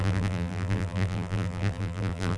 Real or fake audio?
fake